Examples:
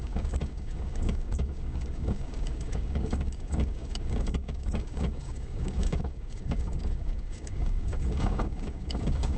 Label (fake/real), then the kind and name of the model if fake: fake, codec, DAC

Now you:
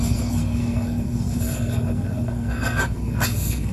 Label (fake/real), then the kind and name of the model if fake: fake, codec, SNAC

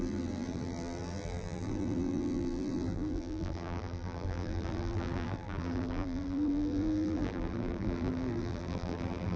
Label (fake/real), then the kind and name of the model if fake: fake, vocoder, BigVGAN v2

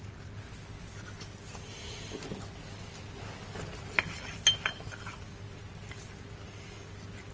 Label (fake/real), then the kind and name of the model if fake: real